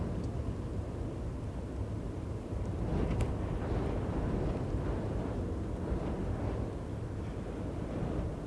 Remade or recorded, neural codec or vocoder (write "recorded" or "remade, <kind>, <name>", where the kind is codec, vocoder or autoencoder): recorded